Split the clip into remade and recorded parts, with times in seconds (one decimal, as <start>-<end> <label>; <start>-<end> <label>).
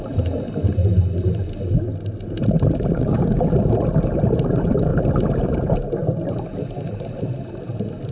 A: 0.0-2.9 recorded; 2.9-3.4 remade; 3.4-8.1 recorded